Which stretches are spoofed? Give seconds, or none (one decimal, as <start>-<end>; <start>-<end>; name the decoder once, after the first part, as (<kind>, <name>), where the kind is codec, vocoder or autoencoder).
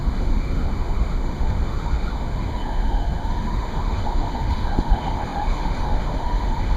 0.0-6.8 (autoencoder, DAC-VAE)